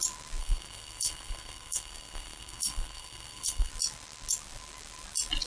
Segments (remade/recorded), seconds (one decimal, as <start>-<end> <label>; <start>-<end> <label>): 0.0-0.4 recorded; 0.4-3.7 remade; 3.7-5.5 recorded